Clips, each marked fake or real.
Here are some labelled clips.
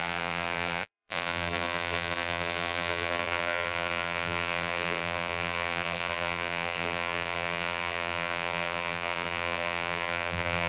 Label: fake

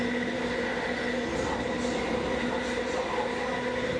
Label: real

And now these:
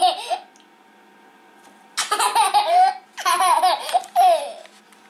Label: real